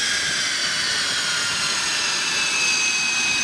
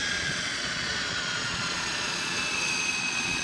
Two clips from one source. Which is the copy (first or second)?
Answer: second